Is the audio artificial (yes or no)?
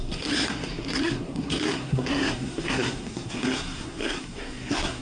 yes